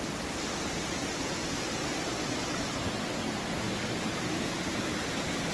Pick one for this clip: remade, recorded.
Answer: recorded